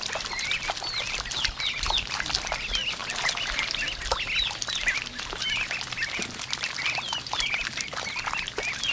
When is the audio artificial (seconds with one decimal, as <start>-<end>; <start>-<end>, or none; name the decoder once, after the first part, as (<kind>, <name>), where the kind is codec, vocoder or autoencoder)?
none